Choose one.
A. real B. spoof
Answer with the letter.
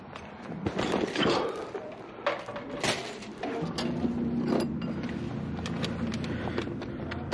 A